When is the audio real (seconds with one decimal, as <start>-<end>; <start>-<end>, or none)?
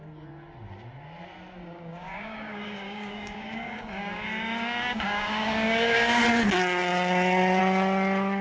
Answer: 0.0-1.6; 6.2-8.4